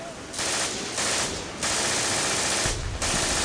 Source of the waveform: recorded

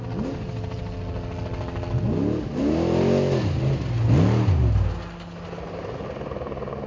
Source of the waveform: recorded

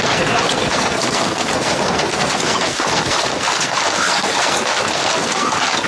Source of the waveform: remade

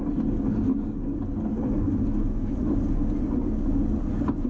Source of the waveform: recorded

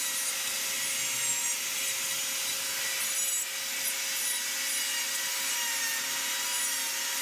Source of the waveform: recorded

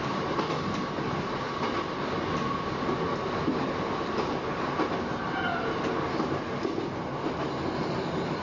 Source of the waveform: recorded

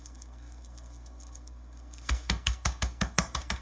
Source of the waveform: remade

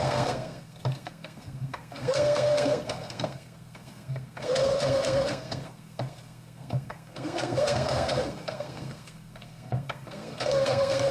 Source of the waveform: remade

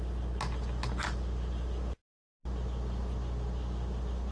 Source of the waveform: recorded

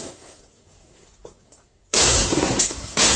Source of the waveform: remade